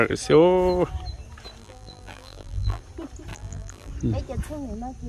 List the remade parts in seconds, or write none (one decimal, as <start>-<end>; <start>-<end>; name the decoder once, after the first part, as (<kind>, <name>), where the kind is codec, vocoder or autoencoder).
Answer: 1.6-2.8 (vocoder, BigVGAN v2); 3.3-3.9